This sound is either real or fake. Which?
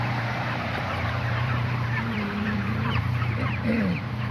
fake